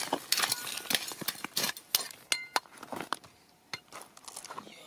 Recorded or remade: recorded